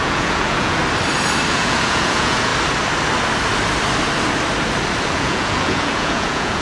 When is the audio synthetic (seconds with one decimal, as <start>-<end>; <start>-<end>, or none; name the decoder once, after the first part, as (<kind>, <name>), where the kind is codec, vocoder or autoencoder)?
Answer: 0.0-0.8 (vocoder, Vocos); 1.5-2.5; 5.1-6.6

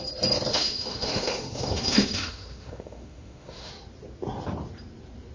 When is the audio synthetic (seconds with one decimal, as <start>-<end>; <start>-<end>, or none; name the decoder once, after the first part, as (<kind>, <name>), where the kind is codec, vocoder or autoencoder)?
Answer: 0.5-3.7 (autoencoder, DAC-VAE)

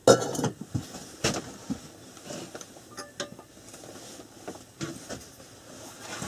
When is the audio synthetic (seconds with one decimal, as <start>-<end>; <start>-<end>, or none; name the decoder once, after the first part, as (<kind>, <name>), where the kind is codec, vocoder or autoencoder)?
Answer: none

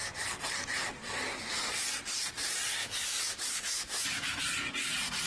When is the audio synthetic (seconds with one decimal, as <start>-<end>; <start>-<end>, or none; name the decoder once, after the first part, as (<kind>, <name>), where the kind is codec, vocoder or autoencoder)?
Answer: 2.8-4.4 (autoencoder, DAC-VAE)